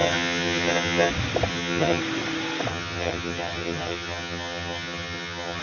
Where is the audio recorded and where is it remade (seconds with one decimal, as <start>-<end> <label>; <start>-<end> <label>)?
0.0-1.1 remade; 1.1-1.5 recorded; 1.5-2.0 remade; 2.0-2.7 recorded; 2.7-5.6 remade